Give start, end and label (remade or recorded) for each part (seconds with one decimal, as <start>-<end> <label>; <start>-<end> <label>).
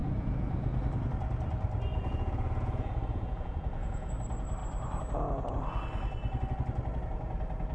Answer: 0.0-0.5 remade; 0.5-1.9 recorded; 1.9-4.1 remade; 4.1-7.7 recorded